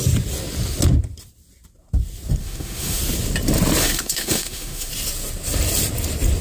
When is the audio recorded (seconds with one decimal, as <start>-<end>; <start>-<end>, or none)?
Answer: 0.0-2.4; 3.0-3.8; 4.9-6.4